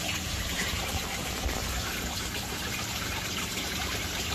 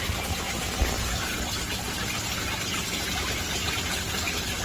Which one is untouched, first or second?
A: second